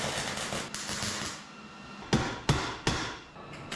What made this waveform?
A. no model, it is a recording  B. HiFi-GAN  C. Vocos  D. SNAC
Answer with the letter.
A